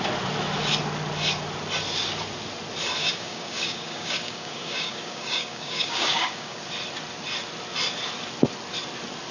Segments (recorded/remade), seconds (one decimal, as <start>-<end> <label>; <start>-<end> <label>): 0.0-3.0 recorded; 3.0-6.6 remade; 6.6-9.3 recorded